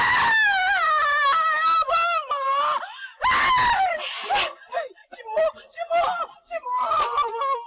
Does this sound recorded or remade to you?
recorded